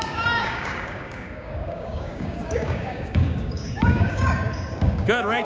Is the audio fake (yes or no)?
yes